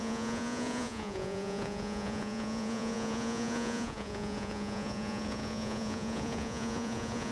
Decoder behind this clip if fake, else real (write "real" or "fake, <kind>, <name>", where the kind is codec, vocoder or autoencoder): fake, vocoder, Vocos